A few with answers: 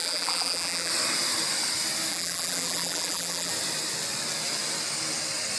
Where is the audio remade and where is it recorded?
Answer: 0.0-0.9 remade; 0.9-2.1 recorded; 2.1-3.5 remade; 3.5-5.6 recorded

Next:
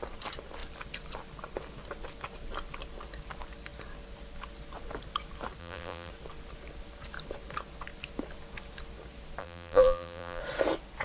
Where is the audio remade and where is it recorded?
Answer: 0.0-5.6 recorded; 5.6-6.1 remade; 6.1-9.4 recorded; 9.4-10.4 remade; 10.4-11.0 recorded

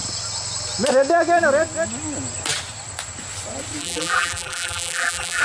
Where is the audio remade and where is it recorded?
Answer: 0.0-3.8 recorded; 3.8-5.4 remade

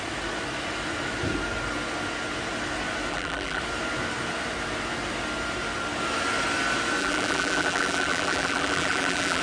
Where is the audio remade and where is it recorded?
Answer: 0.0-3.1 recorded; 3.1-3.6 remade; 3.6-7.0 recorded; 7.0-9.4 remade

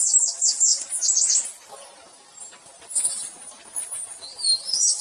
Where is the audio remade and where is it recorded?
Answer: 0.0-5.0 recorded

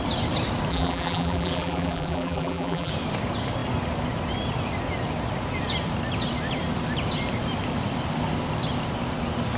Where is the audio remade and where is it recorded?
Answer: 0.0-0.7 recorded; 0.7-2.9 remade; 2.9-9.6 recorded

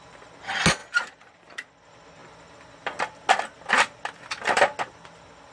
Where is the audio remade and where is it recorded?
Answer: 0.0-0.8 recorded; 0.8-1.7 remade; 1.7-5.5 recorded